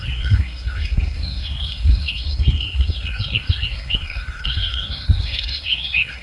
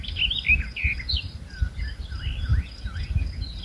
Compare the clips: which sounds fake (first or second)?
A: first